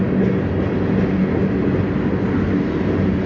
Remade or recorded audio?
recorded